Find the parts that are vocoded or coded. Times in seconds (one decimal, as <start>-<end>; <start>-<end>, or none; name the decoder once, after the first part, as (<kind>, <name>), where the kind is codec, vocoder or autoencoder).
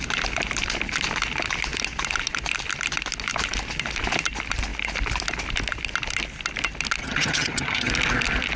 7.0-7.9 (vocoder, HiFi-GAN)